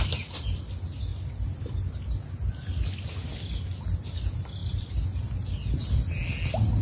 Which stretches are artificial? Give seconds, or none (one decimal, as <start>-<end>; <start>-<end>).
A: 1.1-1.6; 4.6-6.2

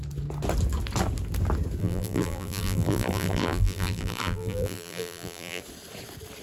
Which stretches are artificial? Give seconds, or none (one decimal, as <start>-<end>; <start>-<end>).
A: 1.8-5.6

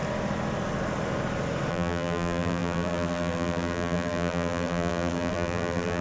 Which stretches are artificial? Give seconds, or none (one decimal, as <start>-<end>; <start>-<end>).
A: 1.7-6.0

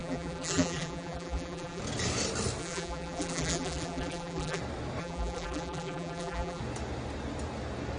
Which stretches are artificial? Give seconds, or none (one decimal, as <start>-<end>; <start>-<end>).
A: 0.0-1.8; 2.6-4.6; 5.0-6.6

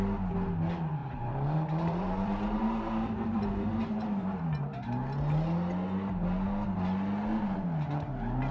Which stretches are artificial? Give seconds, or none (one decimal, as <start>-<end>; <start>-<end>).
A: 1.0-4.4

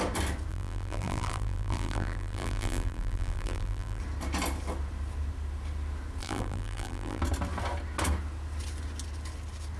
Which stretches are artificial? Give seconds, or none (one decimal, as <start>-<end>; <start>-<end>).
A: 0.5-4.0; 6.2-7.2

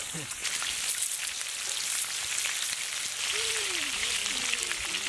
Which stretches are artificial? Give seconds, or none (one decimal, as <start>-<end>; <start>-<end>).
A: 0.0-0.4; 3.0-4.2

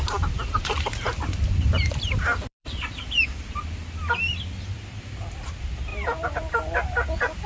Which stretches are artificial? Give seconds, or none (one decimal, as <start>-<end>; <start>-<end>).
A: 0.0-5.9